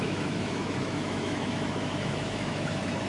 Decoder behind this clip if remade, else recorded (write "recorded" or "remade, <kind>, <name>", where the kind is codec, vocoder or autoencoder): remade, autoencoder, DAC-VAE